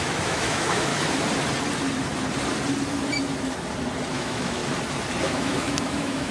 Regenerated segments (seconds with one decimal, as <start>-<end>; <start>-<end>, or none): 0.0-0.9; 4.1-4.6; 5.3-6.3